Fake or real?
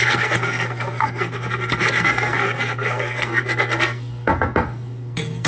fake